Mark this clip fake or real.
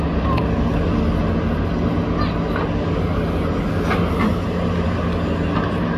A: real